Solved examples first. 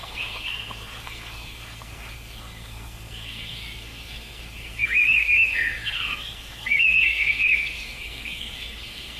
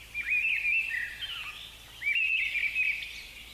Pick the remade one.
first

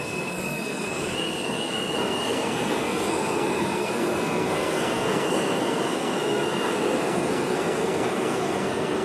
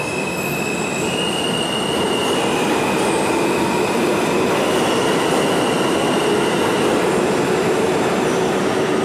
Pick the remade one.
first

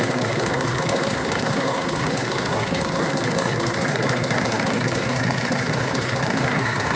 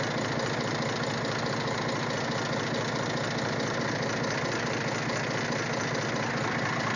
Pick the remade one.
first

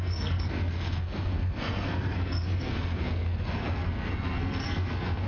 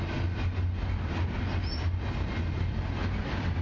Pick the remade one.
first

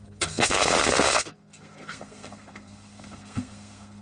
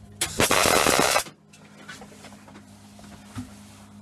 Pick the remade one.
first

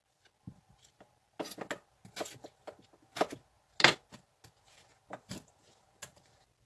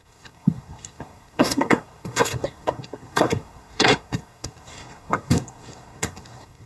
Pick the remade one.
second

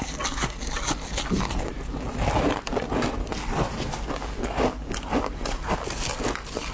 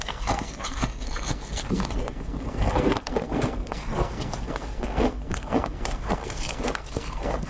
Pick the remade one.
second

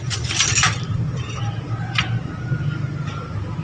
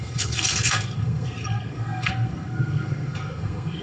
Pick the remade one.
second